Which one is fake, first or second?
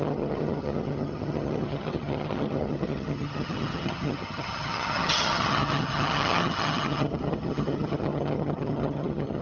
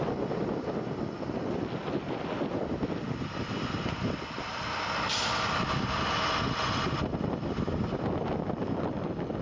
first